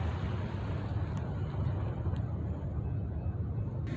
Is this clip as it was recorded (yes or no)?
yes